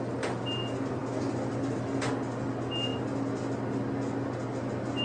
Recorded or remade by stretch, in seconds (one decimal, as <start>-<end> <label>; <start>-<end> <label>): 0.0-1.0 recorded; 1.0-1.5 remade; 1.5-2.9 recorded; 2.9-5.0 remade